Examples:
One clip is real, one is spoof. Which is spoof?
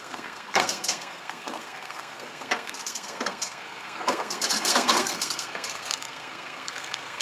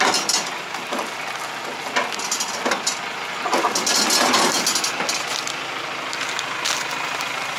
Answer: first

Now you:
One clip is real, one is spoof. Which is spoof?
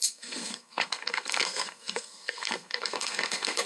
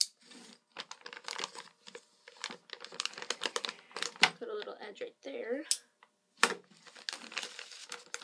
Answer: first